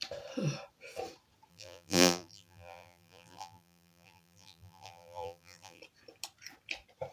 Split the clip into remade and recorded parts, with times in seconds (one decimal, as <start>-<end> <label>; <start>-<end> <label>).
0.0-1.5 recorded; 1.5-5.8 remade; 5.8-7.1 recorded